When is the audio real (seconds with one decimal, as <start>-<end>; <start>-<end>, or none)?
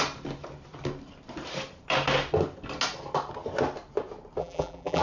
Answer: 0.0-4.4